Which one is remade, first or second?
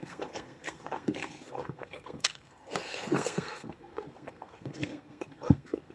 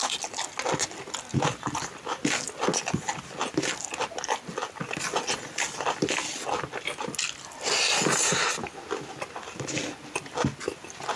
first